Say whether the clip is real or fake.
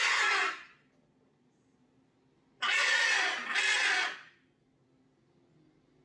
real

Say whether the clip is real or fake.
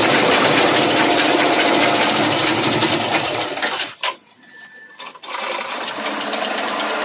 real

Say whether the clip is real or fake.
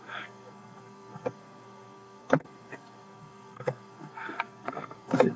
fake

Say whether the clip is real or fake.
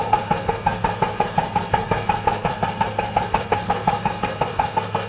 fake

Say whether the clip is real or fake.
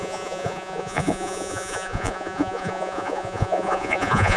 fake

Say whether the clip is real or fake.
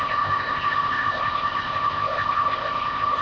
fake